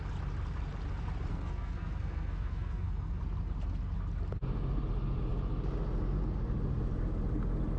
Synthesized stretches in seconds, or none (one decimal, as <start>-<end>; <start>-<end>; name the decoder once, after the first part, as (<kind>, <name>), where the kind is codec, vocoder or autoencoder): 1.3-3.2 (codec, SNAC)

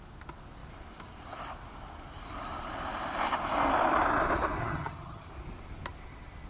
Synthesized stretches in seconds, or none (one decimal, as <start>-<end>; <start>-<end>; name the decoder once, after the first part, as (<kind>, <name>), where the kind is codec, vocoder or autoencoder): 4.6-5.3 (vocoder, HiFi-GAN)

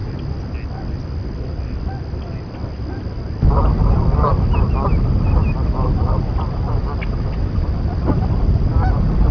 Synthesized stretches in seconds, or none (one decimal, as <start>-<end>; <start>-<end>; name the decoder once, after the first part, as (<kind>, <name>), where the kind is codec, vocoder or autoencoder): none

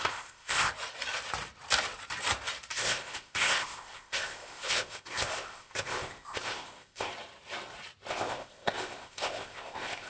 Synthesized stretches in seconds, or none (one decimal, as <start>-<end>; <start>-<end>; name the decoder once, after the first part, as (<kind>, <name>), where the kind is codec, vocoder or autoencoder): 0.0-0.7 (codec, ZipCodec); 2.7-7.1; 8.1-10.1

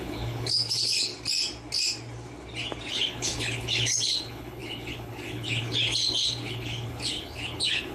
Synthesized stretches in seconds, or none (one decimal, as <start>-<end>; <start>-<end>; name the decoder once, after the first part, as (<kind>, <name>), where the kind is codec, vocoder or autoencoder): 0.0-1.1 (codec, HILCodec); 2.9-7.9

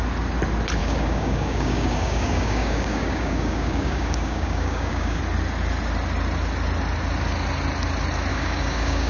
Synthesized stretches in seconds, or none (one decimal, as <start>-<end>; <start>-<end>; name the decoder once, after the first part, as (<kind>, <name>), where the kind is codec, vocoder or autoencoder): 0.8-5.2 (codec, DAC); 8.3-9.1

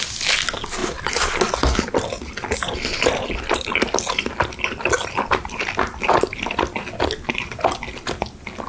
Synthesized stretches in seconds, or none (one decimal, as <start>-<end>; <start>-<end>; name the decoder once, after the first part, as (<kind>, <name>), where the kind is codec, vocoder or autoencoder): none